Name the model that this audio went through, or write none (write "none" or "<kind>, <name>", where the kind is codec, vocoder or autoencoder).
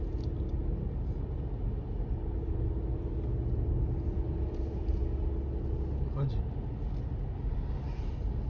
none